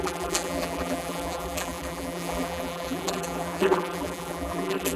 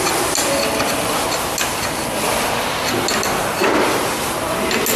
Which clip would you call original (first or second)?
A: second